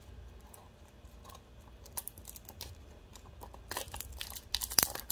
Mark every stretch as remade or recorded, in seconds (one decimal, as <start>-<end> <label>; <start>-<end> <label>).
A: 0.0-5.1 recorded